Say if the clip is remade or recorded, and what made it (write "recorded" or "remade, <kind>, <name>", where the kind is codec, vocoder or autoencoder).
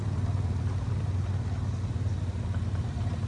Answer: remade, vocoder, BigVGAN v2